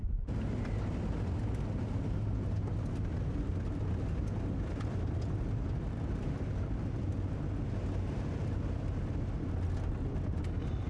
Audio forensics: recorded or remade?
recorded